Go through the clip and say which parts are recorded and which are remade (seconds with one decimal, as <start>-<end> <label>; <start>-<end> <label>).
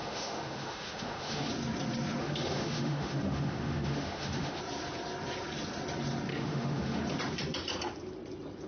0.0-1.5 remade; 1.5-2.2 recorded; 2.2-4.6 remade; 4.6-6.3 recorded; 6.3-7.0 remade; 7.0-8.7 recorded